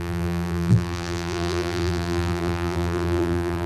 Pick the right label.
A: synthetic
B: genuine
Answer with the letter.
A